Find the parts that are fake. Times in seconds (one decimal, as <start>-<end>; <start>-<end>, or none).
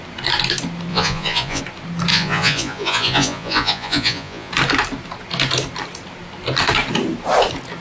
0.9-1.6; 2.1-4.5